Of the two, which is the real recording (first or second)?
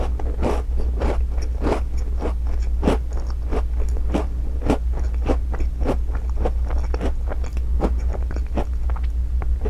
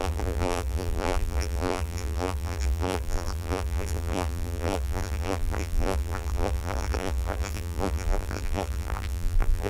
first